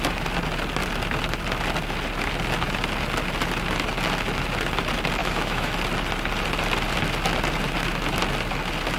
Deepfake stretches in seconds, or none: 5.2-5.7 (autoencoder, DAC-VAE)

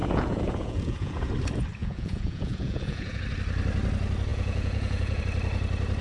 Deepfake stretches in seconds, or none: 0.0-1.3 (vocoder, Vocos); 1.8-3.2; 4.3-5.2

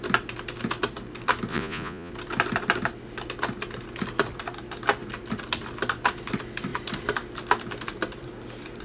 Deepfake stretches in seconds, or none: 1.5-2.1 (vocoder, Vocos)